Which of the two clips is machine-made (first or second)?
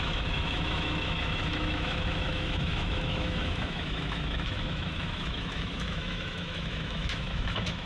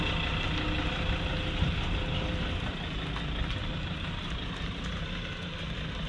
first